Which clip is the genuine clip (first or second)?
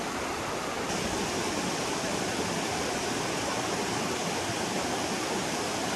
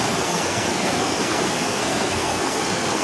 first